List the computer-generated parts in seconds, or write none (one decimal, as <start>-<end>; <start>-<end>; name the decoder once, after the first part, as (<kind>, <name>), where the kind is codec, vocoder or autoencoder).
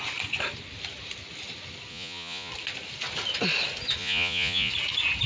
1.9-2.5 (vocoder, Vocos); 4.0-4.7